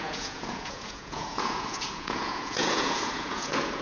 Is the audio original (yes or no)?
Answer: no